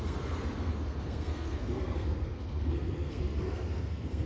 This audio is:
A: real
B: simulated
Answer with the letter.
B